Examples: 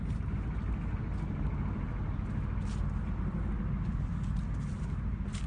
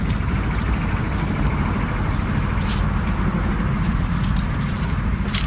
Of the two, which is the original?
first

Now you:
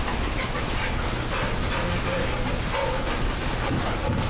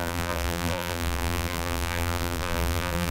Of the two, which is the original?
first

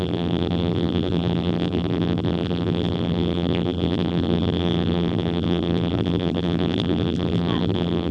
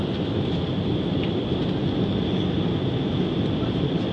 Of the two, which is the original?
second